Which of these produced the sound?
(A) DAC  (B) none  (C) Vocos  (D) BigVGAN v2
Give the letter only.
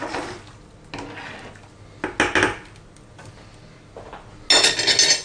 B